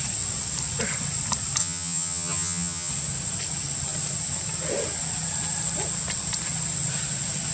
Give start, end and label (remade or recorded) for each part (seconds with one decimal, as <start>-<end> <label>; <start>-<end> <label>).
0.0-1.6 recorded; 1.6-2.9 remade; 2.9-7.5 recorded